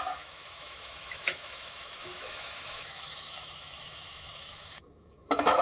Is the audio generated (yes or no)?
yes